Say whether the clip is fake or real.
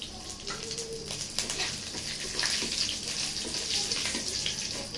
real